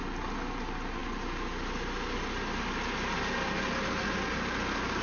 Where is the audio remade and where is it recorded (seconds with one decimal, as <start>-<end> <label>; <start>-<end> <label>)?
0.0-5.0 recorded